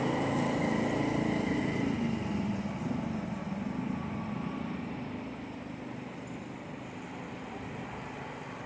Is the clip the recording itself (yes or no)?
yes